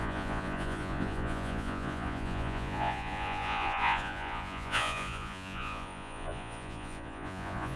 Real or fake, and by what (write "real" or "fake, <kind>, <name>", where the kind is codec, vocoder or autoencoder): fake, vocoder, Vocos